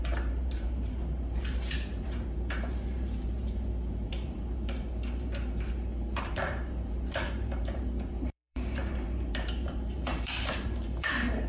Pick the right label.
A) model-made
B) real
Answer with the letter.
A